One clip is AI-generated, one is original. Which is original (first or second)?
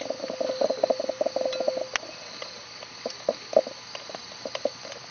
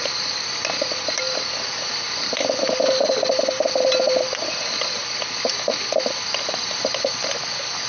first